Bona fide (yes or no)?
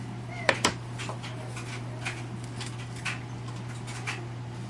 yes